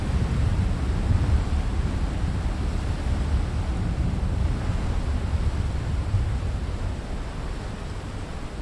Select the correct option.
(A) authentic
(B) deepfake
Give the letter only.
A